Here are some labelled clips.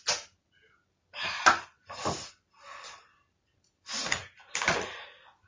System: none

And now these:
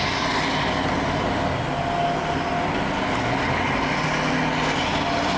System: none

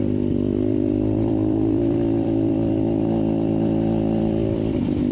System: vocoder, BigVGAN v2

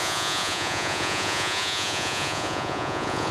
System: vocoder, Vocos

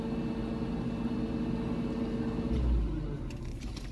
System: none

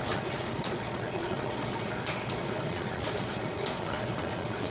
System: vocoder, Vocos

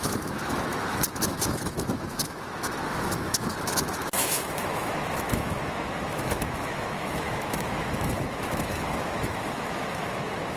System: autoencoder, DAC-VAE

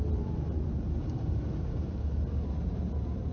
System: vocoder, BigVGAN v2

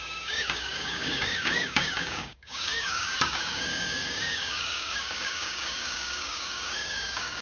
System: codec, DAC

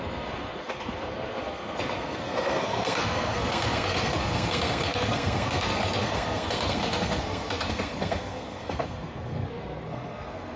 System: codec, SNAC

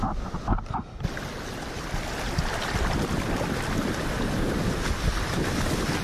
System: vocoder, BigVGAN v2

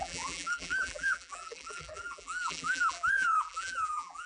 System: vocoder, BigVGAN v2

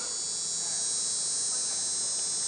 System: none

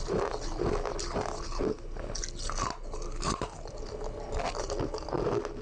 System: none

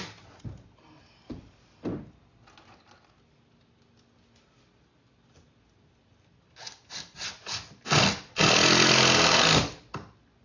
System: none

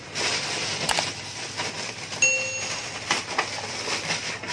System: none